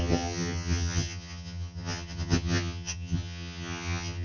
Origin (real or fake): fake